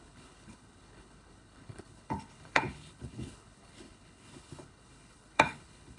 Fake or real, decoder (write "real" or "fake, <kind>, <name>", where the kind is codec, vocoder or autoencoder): fake, codec, HILCodec